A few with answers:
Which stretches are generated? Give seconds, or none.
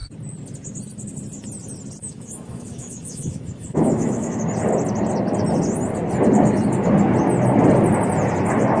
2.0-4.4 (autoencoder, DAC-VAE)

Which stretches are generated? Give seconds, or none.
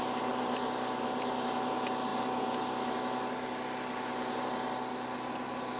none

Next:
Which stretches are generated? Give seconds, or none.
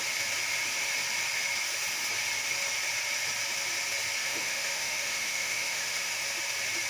4.2-6.1 (autoencoder, DAC-VAE)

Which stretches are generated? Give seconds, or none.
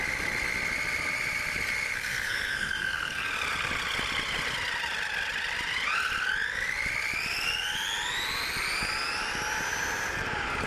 2.0-3.3 (codec, SNAC)